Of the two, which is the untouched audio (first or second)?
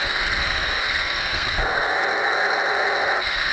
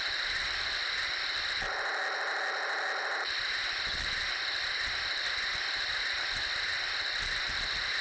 second